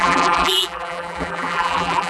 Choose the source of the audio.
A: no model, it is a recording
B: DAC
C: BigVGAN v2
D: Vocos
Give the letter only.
C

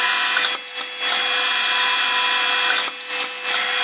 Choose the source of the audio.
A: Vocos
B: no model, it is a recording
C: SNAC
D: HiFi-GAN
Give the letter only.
B